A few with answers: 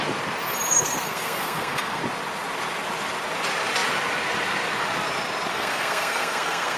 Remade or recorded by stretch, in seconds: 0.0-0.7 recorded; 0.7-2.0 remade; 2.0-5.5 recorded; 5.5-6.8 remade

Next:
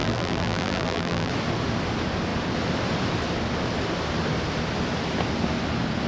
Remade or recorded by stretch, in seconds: 0.0-1.3 remade; 1.3-6.1 recorded

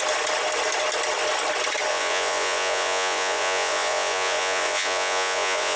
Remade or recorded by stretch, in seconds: 0.0-1.9 recorded; 1.9-5.8 remade

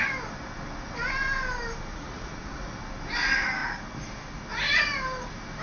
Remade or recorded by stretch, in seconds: 0.0-1.9 recorded; 1.9-2.8 remade; 2.8-5.6 recorded

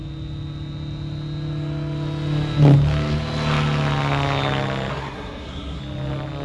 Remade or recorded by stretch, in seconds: 0.0-4.9 recorded; 4.9-5.8 remade; 5.8-6.4 recorded

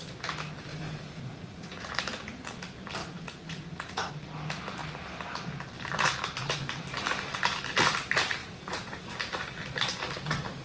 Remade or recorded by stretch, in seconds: 0.0-0.7 recorded; 0.7-1.9 remade; 1.9-3.0 recorded; 3.0-4.1 remade; 4.1-8.4 recorded; 8.4-9.1 remade; 9.1-10.6 recorded